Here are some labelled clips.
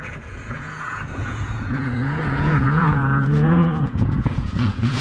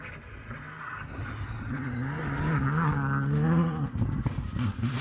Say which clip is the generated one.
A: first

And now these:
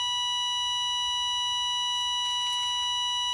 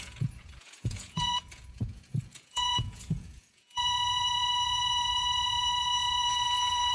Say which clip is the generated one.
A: second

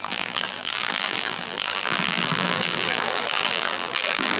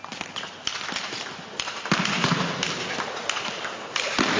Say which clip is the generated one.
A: first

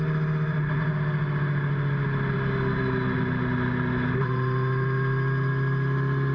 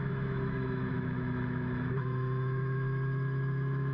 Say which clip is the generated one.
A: second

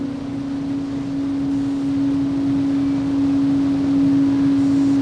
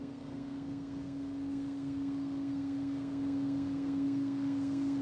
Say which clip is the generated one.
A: second